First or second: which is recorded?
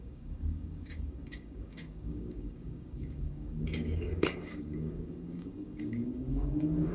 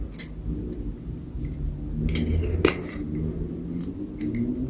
second